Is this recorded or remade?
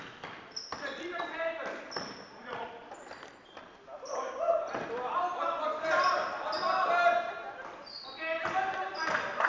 recorded